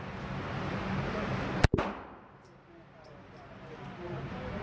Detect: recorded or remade recorded